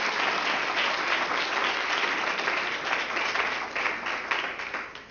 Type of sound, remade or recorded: recorded